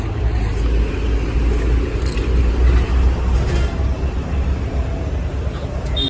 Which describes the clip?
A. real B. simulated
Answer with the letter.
A